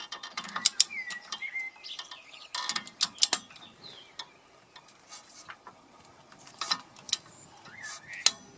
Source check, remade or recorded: recorded